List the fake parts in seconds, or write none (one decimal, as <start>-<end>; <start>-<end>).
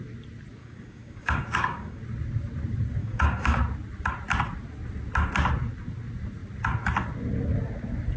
0.6-2.0; 3.0-3.6